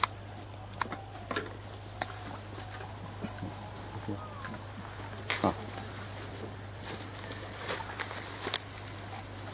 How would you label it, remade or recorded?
recorded